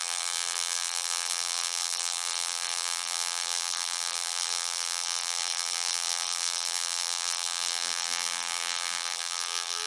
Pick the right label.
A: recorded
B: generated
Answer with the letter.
B